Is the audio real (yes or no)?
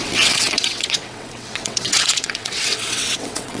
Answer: no